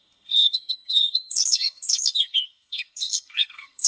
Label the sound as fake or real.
fake